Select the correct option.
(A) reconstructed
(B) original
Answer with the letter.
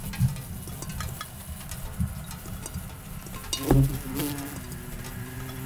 B